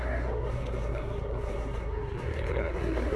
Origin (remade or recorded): remade